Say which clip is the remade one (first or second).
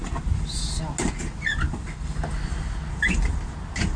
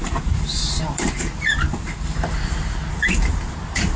second